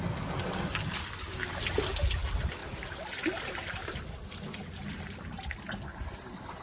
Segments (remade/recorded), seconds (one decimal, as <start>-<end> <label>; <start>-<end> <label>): 0.0-2.6 recorded; 2.6-4.0 remade; 4.0-6.6 recorded

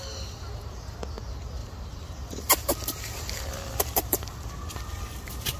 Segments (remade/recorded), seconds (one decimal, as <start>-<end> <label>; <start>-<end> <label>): 0.0-1.6 recorded; 1.6-5.0 remade; 5.0-5.6 recorded

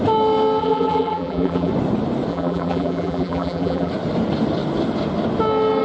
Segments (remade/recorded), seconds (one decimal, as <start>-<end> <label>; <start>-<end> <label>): 0.0-0.6 recorded; 0.6-1.7 remade; 1.7-2.3 recorded; 2.3-3.9 remade; 3.9-5.8 recorded

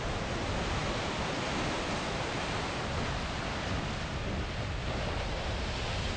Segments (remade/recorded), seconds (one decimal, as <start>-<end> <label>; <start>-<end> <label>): 0.0-6.2 recorded

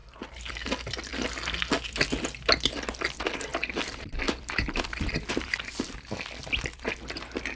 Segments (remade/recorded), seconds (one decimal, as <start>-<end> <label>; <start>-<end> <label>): 0.0-3.5 recorded; 3.5-5.9 remade; 5.9-6.4 recorded; 6.4-7.6 remade

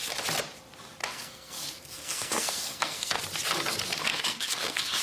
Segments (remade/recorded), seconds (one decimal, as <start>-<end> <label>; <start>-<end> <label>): 0.0-1.0 recorded; 1.0-3.2 remade; 3.2-4.1 recorded; 4.1-5.0 remade

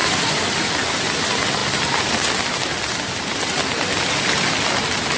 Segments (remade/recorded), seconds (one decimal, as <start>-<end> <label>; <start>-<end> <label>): 0.0-1.2 remade; 1.2-5.2 recorded

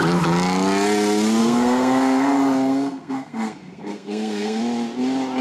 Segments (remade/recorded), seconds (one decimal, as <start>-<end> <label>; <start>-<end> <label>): 0.0-1.4 recorded; 1.4-4.6 remade; 4.6-5.4 recorded